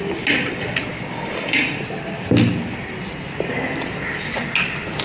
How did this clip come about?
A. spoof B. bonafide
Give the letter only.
B